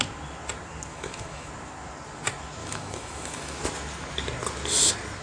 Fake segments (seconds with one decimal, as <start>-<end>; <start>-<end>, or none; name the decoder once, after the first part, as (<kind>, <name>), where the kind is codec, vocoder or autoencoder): 0.9-1.5 (autoencoder, DAC-VAE); 2.6-3.6